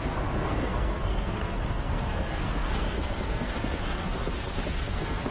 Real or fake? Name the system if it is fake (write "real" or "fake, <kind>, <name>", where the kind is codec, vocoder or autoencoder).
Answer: fake, codec, SNAC